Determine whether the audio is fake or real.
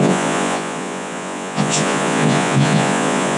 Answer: fake